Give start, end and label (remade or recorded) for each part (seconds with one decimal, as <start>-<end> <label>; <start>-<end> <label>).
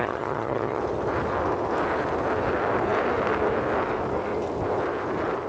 0.0-0.8 remade; 0.8-5.5 recorded